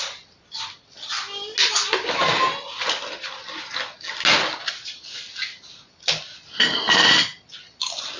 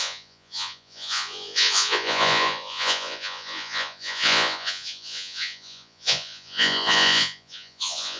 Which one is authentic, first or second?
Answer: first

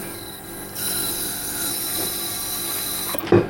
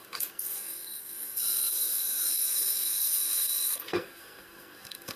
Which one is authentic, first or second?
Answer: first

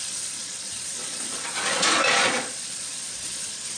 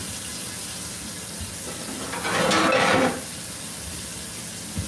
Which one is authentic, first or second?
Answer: second